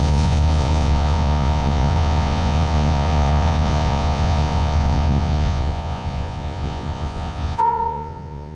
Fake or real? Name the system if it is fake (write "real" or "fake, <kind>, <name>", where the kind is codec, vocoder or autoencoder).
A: fake, vocoder, Vocos